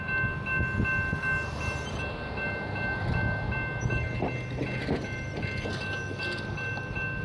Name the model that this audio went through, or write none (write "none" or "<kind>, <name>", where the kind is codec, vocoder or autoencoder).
none